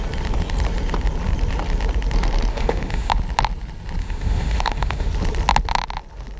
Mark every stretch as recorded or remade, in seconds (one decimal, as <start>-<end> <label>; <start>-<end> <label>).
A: 0.0-2.5 recorded; 2.5-3.1 remade; 3.1-4.0 recorded; 4.0-5.1 remade; 5.1-6.4 recorded